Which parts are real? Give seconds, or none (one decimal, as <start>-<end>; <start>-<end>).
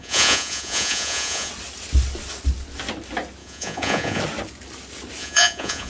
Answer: 1.5-3.4; 4.2-5.2